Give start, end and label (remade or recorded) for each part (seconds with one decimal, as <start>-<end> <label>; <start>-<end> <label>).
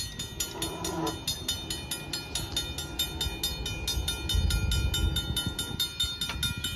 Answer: 0.0-6.8 recorded